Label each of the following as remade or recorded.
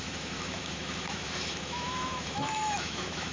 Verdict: remade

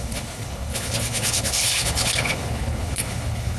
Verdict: remade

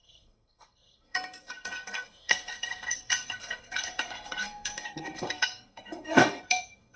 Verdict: remade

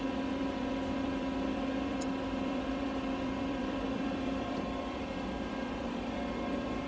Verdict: remade